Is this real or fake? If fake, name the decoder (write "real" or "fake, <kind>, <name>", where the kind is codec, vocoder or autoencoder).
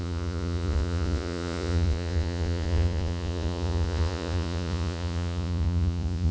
fake, vocoder, Vocos